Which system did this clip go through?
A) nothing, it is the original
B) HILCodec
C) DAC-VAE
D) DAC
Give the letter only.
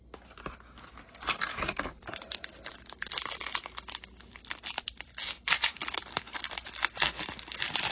A